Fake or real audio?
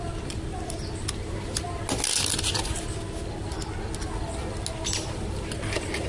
real